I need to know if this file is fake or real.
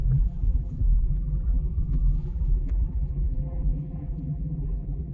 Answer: fake